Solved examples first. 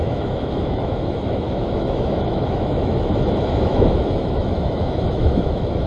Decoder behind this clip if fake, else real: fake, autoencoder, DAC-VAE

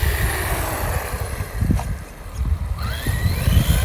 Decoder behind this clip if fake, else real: real